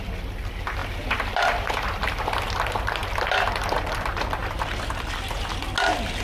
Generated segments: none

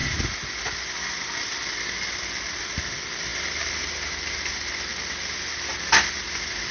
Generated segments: none

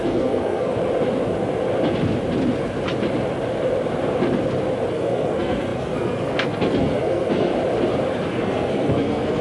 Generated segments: 0.0-0.8 (codec, SNAC); 4.9-7.5; 8.3-9.4

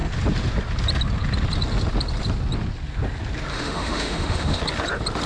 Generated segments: 3.5-4.6 (autoencoder, DAC-VAE)

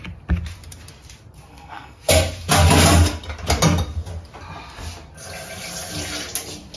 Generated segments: 1.5-2.1 (codec, SNAC)

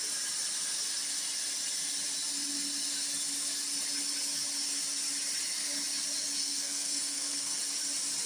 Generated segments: 6.4-7.6 (codec, SNAC)

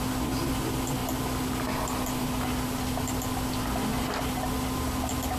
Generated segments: none